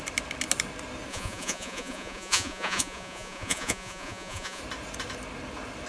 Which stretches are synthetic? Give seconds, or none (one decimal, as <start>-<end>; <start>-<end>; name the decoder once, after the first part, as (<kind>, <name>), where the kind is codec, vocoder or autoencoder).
1.1-4.6 (vocoder, Vocos)